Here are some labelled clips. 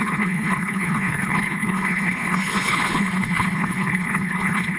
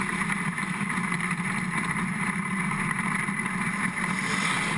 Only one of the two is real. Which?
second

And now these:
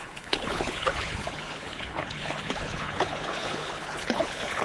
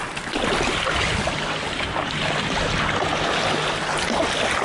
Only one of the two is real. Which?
second